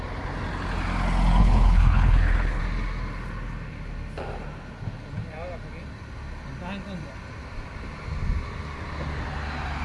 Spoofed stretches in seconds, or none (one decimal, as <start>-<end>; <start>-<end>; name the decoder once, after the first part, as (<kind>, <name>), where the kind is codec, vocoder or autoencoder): 1.4-2.6 (codec, HILCodec)

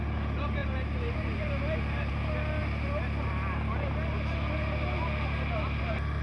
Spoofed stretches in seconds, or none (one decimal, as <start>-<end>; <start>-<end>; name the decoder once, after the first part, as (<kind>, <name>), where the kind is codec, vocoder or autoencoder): 0.6-2.1 (vocoder, BigVGAN v2)

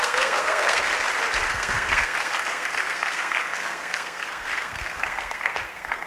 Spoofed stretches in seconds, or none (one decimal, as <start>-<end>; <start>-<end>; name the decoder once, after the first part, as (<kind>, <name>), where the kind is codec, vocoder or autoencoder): 0.0-0.9 (codec, SNAC); 1.5-6.1

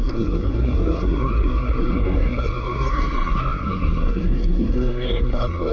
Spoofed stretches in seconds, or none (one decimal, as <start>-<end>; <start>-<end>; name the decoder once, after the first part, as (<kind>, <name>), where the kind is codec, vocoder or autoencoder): 0.0-5.7 (codec, SNAC)

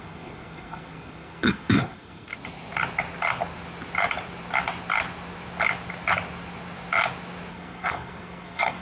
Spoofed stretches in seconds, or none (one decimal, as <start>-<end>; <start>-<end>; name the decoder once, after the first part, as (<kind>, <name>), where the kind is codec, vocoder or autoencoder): 0.0-2.3 (codec, SNAC); 7.5-8.8

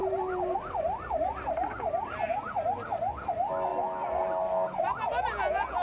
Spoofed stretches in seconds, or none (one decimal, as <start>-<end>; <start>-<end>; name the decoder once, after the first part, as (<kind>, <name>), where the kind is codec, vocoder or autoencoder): 0.0-2.6 (vocoder, BigVGAN v2)